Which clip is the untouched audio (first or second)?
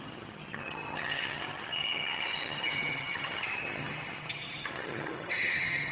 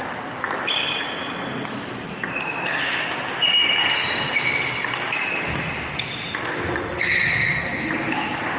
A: second